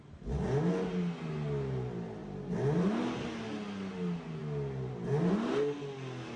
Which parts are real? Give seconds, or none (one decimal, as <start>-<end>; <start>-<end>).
0.0-6.4